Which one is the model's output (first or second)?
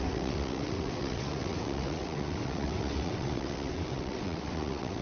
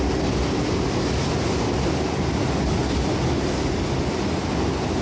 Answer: first